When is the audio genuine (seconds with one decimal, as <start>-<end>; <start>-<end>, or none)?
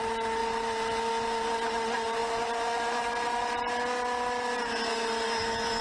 0.0-5.8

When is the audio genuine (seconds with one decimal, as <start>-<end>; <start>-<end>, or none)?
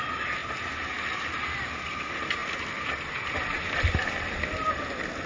0.0-5.3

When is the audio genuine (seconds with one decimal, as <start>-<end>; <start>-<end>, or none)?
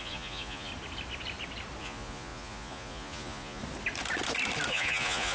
0.7-1.8; 3.6-4.7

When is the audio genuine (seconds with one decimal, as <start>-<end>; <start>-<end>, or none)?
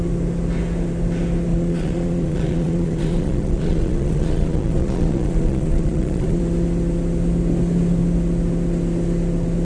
0.0-1.5; 6.4-9.6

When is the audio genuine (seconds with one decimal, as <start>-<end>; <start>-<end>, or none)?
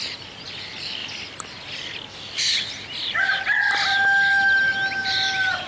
0.0-5.7